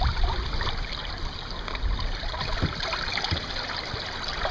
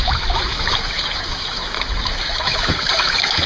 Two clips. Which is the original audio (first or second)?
first